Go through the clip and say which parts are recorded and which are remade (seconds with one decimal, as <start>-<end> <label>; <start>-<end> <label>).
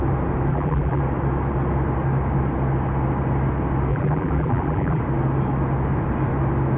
0.0-0.5 recorded; 0.5-1.0 remade; 1.0-3.9 recorded; 3.9-5.0 remade; 5.0-6.8 recorded